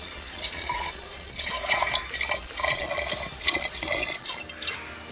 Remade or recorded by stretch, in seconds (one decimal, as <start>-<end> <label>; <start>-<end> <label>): 0.0-1.9 remade; 1.9-2.4 recorded; 2.4-3.0 remade; 3.0-3.4 recorded; 3.4-4.4 remade; 4.4-5.1 recorded